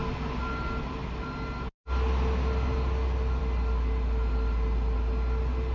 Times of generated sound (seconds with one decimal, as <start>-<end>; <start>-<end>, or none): none